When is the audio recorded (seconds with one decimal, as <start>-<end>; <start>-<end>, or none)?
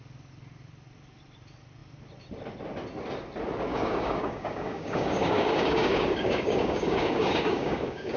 0.0-3.7